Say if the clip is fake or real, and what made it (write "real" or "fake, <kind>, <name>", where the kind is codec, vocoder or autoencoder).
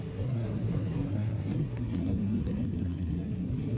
fake, codec, SNAC